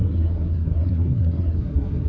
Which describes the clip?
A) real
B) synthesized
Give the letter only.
B